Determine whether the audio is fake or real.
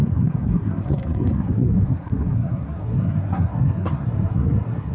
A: fake